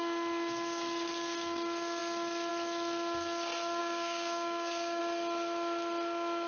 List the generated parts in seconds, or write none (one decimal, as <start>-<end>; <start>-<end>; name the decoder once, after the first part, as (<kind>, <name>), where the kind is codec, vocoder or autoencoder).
3.8-5.0 (codec, DAC)